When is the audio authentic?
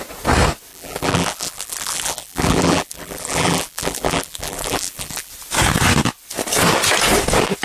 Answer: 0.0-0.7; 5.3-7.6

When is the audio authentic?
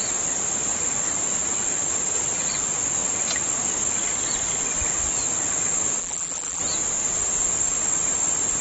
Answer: 0.0-6.0; 6.6-8.6